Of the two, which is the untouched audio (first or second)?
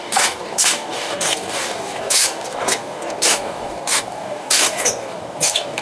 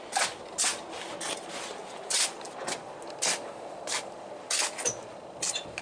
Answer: second